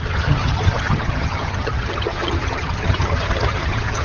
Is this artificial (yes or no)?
yes